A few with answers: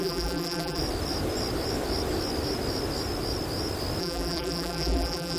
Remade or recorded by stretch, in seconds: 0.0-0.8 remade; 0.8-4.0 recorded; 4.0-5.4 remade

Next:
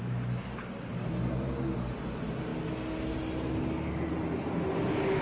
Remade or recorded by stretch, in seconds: 0.0-5.2 recorded

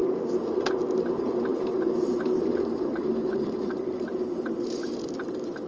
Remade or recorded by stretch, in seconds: 0.0-1.5 recorded; 1.5-4.9 remade; 4.9-5.7 recorded

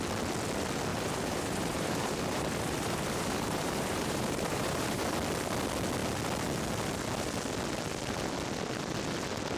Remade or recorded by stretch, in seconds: 0.0-0.9 recorded; 0.9-5.0 remade; 5.0-9.6 recorded